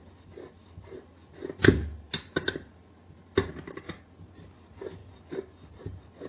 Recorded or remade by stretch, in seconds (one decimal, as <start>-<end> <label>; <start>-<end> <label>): 0.0-6.3 recorded